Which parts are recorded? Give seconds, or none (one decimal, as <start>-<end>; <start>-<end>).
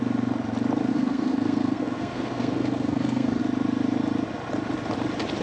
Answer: 0.0-0.9; 3.4-5.4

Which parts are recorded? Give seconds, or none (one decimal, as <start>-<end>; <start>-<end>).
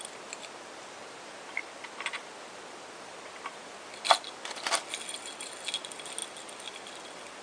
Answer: 0.0-7.4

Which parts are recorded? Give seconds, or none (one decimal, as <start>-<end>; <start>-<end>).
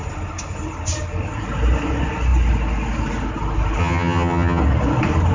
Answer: 0.0-3.8; 4.6-5.3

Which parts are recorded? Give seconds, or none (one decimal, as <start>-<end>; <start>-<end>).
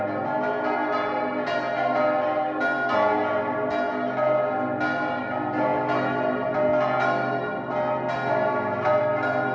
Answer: 0.0-9.5